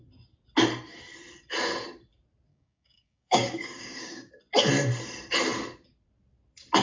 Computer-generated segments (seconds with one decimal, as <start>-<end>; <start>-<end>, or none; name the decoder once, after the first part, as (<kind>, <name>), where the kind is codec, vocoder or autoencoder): 2.5-4.3 (codec, DAC)